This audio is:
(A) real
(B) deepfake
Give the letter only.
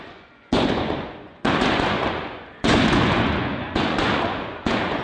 B